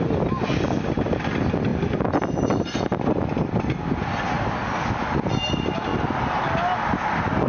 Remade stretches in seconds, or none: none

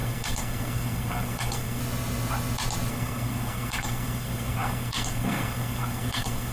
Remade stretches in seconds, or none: 0.0-1.8; 2.9-6.5

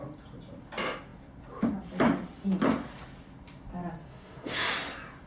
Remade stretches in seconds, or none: 4.1-4.7

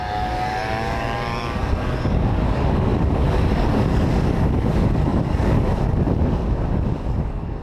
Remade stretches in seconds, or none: 0.0-7.6